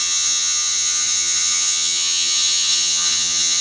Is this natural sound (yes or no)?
no